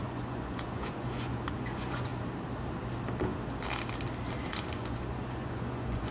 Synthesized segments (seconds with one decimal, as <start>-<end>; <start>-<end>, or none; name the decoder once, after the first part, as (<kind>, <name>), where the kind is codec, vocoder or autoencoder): 0.0-2.1 (vocoder, Vocos); 4.6-6.1